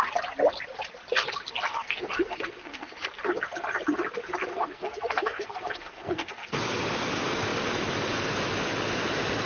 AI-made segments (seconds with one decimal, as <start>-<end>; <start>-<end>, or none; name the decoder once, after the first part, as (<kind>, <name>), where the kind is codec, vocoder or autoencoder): 1.7-2.9 (codec, SNAC); 4.5-6.6